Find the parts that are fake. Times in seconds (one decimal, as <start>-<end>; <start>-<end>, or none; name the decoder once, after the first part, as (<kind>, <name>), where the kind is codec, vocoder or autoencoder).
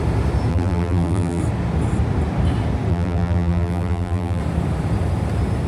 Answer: 0.5-1.4 (vocoder, BigVGAN v2); 2.9-4.4